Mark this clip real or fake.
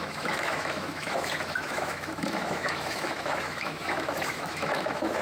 fake